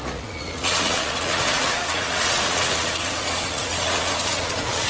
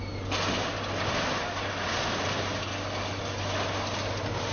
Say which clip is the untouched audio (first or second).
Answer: second